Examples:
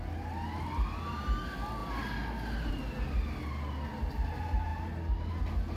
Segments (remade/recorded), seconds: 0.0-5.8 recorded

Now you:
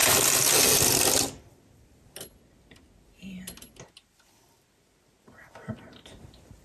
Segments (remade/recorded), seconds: 0.0-6.6 recorded

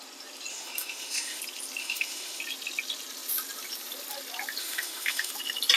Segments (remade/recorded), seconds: 0.0-0.5 recorded; 0.5-1.4 remade; 1.4-1.8 recorded; 1.8-2.4 remade; 2.4-4.6 recorded; 4.6-5.3 remade; 5.3-5.8 recorded

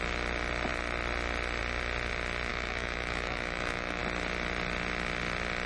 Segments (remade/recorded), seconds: 0.0-2.5 recorded; 2.5-4.0 remade; 4.0-5.7 recorded

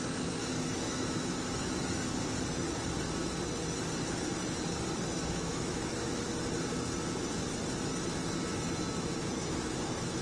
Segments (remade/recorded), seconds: 0.0-0.4 recorded; 0.4-2.0 remade; 2.0-5.5 recorded; 5.5-6.4 remade; 6.4-9.4 recorded; 9.4-10.2 remade

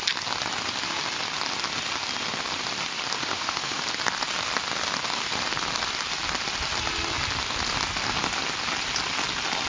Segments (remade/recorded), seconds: 0.0-3.2 recorded; 3.2-3.8 remade; 3.8-9.7 recorded